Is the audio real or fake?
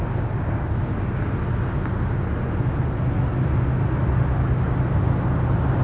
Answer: real